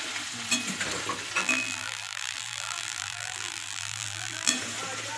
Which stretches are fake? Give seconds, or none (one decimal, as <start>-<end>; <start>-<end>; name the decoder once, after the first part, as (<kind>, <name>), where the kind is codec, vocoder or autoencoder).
1.4-4.5 (vocoder, BigVGAN v2)